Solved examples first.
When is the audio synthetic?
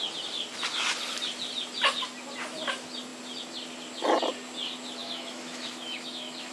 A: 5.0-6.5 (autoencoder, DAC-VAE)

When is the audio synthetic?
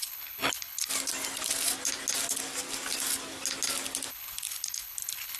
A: 0.0-0.9 (codec, HILCodec); 4.1-5.4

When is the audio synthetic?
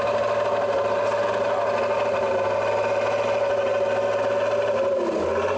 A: none